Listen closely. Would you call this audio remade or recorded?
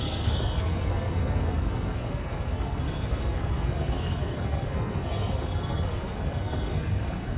remade